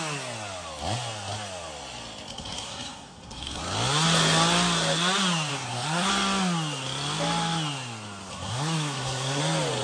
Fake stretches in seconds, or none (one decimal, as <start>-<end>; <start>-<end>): 2.3-3.6; 5.5-6.1; 8.3-9.4